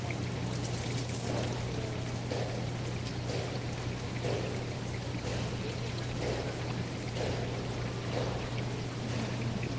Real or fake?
real